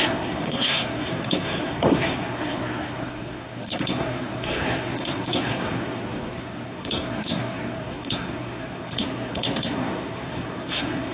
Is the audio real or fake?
fake